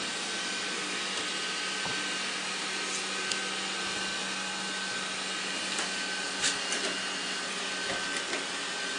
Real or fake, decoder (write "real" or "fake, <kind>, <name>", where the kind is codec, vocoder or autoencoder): real